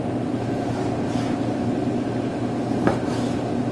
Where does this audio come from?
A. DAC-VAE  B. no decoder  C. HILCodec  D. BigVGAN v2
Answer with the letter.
B